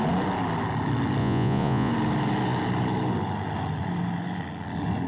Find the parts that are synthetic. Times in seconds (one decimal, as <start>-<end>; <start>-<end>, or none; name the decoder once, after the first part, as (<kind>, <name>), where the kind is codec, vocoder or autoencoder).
1.2-1.9 (vocoder, Vocos)